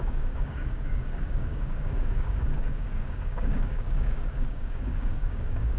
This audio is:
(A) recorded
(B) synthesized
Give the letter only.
B